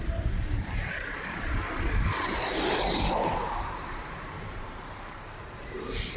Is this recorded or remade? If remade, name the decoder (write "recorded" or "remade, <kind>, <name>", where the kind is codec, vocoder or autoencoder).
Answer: remade, vocoder, BigVGAN v2